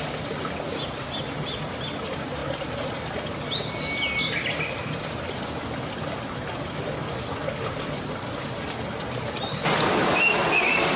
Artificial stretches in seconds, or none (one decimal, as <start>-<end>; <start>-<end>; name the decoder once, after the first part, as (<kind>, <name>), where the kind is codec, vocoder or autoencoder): none